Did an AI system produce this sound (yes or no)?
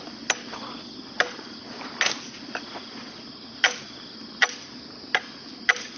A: no